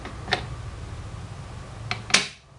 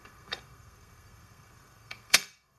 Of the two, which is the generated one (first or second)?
second